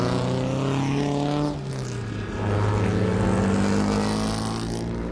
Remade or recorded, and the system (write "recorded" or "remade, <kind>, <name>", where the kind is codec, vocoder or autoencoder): recorded